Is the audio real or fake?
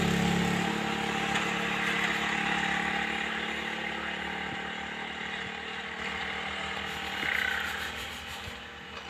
real